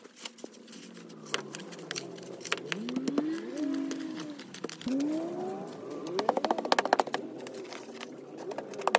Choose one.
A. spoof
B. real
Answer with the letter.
B